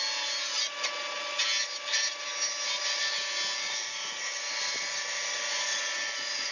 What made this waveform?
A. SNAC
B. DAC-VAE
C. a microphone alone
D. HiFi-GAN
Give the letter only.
C